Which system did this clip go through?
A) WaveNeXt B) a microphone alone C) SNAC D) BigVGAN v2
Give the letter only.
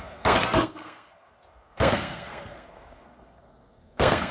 C